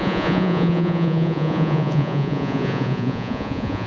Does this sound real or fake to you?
fake